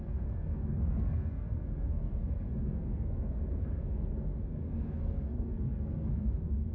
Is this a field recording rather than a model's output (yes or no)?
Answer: no